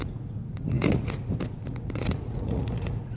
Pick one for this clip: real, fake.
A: fake